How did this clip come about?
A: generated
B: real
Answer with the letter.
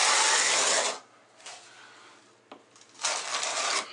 B